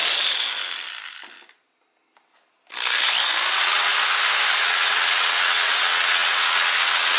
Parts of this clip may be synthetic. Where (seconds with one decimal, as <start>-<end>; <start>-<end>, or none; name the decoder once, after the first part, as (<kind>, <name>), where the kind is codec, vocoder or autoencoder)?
3.5-3.9 (vocoder, WaveNeXt); 4.6-7.2